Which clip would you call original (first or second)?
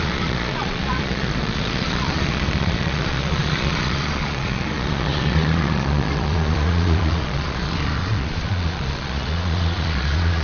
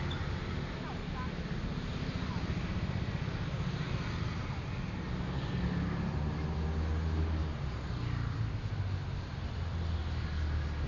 second